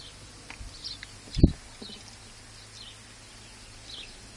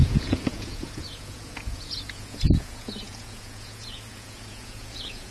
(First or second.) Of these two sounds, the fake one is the second